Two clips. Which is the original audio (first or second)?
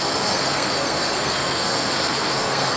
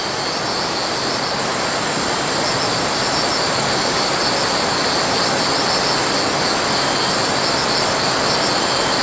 second